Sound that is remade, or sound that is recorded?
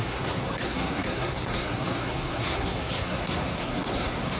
remade